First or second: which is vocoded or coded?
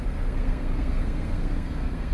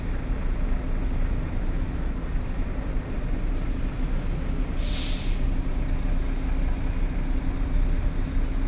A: first